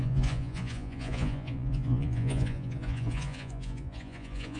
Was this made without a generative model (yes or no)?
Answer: no